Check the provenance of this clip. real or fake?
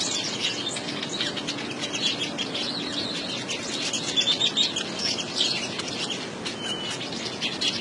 real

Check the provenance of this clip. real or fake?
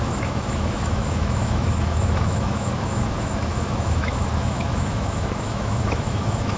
fake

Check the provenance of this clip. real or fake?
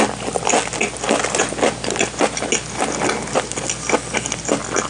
real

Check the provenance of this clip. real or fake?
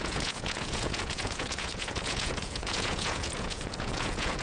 fake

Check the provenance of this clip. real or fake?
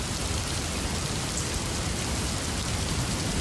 real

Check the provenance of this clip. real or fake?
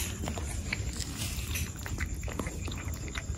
real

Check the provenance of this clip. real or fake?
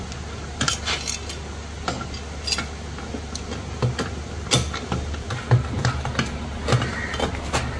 real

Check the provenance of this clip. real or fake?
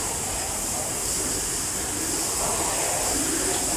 real